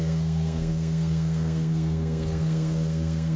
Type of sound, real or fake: fake